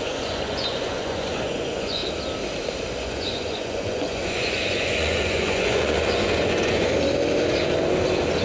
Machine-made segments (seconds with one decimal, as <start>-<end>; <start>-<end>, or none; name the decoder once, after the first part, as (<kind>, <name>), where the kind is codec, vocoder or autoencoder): 0.0-2.0 (vocoder, Vocos); 3.0-6.9